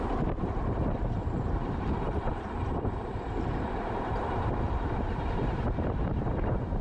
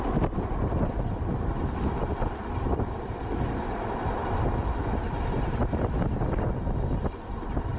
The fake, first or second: first